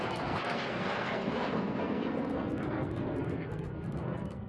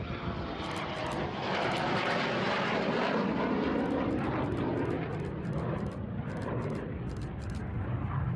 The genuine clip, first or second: second